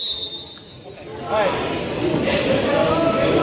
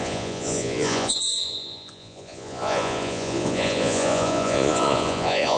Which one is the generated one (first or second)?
second